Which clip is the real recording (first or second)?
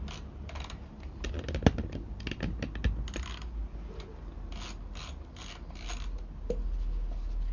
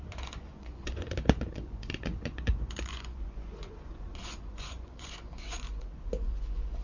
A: first